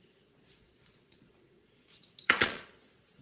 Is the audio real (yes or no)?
no